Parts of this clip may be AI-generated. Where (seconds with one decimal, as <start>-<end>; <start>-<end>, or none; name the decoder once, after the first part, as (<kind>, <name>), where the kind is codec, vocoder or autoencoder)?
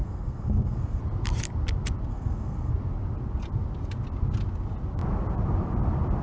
0.0-1.0 (codec, SNAC); 2.1-2.7